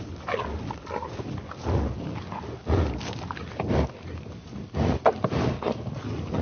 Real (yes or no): yes